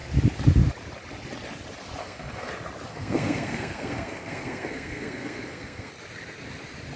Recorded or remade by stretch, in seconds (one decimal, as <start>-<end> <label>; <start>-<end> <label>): 0.0-2.0 recorded; 2.0-2.5 remade; 2.5-2.9 recorded; 2.9-5.9 remade; 5.9-7.0 recorded

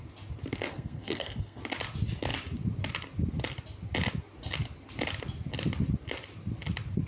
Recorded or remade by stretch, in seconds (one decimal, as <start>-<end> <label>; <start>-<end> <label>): 0.0-0.7 recorded; 0.7-1.6 remade; 1.6-7.1 recorded

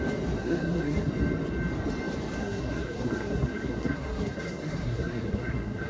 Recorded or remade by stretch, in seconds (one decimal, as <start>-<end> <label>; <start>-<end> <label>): 0.0-0.4 recorded; 0.4-1.1 remade; 1.1-2.4 recorded; 2.4-5.9 remade

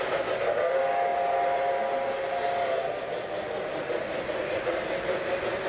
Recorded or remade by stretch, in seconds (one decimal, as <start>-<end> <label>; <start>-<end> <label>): 0.0-5.7 recorded

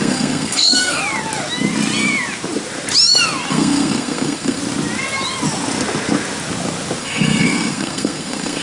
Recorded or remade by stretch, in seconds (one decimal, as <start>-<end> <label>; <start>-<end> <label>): 0.0-1.0 remade; 1.0-3.5 recorded; 3.5-4.6 remade; 4.6-7.0 recorded; 7.0-8.6 remade

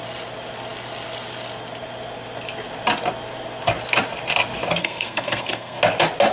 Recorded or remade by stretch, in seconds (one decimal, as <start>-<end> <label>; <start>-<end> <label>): 0.0-4.8 recorded; 4.8-5.8 remade; 5.8-6.3 recorded